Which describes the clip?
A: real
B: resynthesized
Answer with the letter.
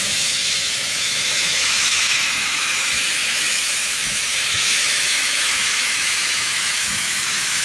B